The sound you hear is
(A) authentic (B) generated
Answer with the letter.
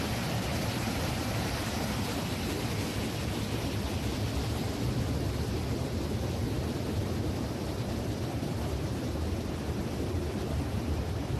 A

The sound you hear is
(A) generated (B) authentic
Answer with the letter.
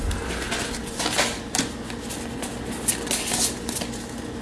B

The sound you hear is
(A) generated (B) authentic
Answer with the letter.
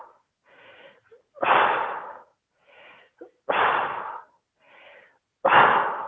B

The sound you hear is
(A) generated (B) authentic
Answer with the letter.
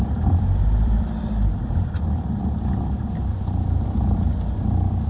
A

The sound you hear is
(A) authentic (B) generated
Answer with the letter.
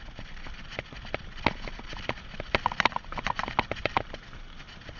A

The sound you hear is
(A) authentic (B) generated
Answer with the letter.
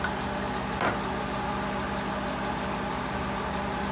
A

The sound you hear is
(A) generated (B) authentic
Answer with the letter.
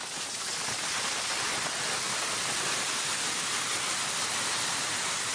B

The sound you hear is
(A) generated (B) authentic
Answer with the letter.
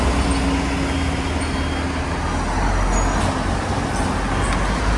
B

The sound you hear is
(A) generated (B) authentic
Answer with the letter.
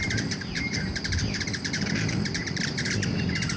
A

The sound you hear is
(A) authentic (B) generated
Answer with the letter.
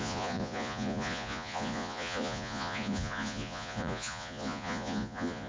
B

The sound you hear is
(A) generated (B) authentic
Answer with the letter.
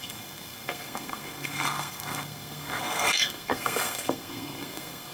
A